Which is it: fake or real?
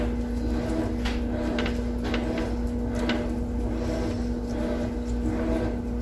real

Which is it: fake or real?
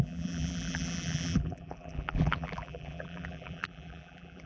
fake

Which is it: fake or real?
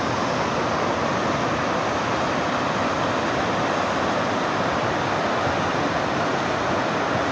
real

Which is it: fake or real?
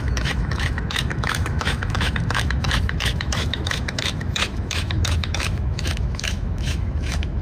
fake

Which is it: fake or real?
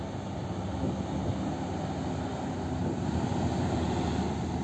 real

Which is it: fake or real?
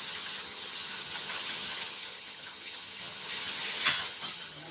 fake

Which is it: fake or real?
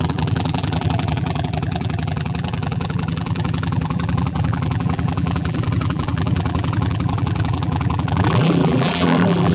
fake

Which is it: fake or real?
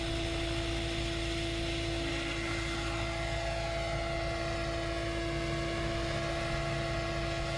real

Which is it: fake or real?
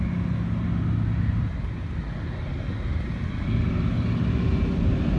real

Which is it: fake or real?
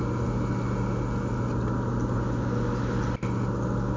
real